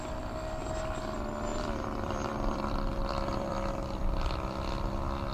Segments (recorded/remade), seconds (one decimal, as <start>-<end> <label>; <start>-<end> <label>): 0.0-1.5 recorded; 1.5-3.7 remade; 3.7-5.3 recorded